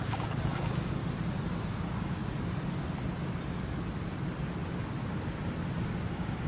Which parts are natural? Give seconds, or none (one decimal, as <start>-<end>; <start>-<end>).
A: 1.0-1.7; 2.2-6.1